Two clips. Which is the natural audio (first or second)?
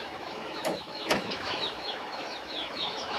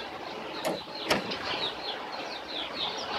second